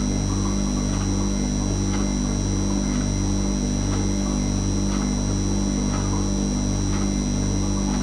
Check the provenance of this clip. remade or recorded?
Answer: recorded